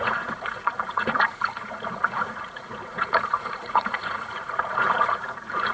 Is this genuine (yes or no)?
no